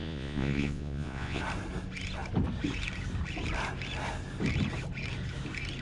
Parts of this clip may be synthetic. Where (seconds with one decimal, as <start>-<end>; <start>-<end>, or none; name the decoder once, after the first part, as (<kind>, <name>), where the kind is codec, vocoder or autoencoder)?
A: 0.0-1.4 (vocoder, Vocos)